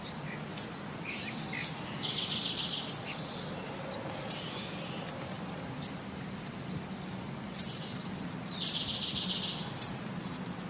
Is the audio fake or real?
real